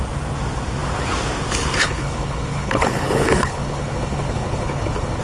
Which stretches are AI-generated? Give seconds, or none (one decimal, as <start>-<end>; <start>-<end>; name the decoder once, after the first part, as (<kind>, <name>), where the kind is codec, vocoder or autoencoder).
1.8-5.2 (codec, HILCodec)